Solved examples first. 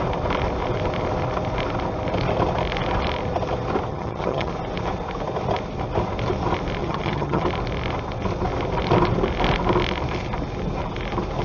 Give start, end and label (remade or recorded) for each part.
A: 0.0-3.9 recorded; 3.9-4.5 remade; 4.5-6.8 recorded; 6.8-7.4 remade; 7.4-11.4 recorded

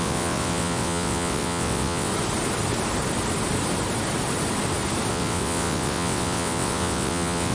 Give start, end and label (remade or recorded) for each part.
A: 0.0-2.1 remade; 2.1-5.1 recorded; 5.1-7.5 remade

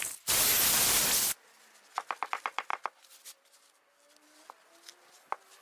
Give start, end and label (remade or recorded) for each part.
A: 0.0-5.6 recorded

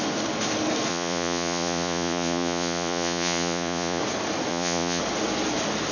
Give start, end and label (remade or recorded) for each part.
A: 0.0-0.9 recorded; 0.9-4.0 remade; 4.0-4.5 recorded; 4.5-5.0 remade; 5.0-5.9 recorded

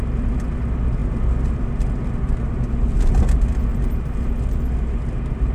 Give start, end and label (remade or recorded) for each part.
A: 0.0-3.7 recorded; 3.7-4.3 remade; 4.3-5.5 recorded

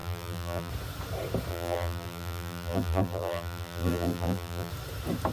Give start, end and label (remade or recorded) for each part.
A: 0.0-0.7 remade; 0.7-1.5 recorded; 1.5-4.7 remade; 4.7-5.3 recorded

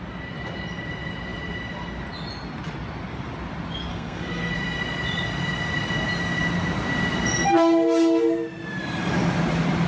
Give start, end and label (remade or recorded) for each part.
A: 0.0-3.9 recorded; 3.9-4.5 remade; 4.5-9.9 recorded